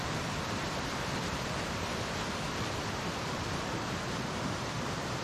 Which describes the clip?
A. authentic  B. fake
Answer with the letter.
B